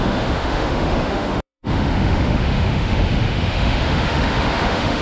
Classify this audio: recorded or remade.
remade